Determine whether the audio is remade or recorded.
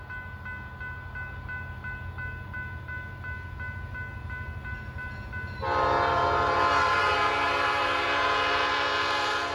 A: recorded